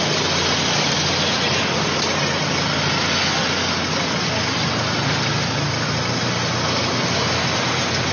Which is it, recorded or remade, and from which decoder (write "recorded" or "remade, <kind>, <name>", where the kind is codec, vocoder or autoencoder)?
recorded